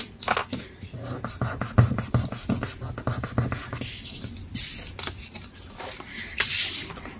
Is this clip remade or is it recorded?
recorded